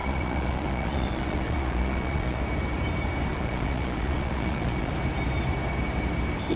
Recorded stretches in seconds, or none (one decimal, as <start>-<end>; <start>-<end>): 2.4-3.3; 4.9-6.6